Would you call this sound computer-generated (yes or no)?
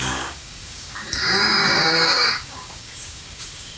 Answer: yes